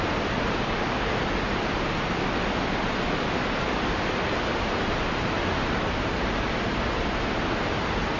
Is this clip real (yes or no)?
yes